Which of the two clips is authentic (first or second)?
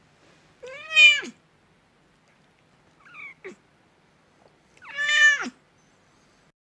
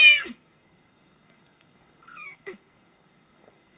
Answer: first